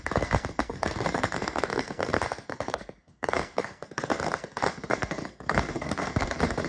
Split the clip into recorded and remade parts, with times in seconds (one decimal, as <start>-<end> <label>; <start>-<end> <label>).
0.0-6.7 remade